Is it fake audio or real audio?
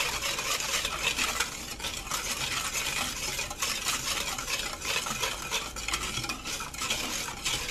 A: real